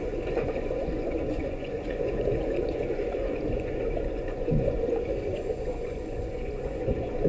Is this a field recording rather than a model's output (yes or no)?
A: no